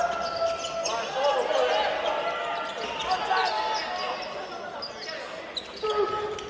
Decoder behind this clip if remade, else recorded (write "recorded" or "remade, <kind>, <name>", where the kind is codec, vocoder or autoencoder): recorded